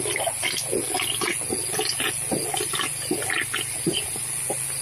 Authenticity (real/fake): real